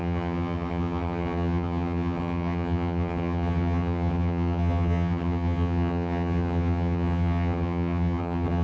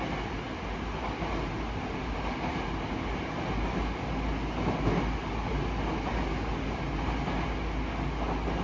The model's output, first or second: first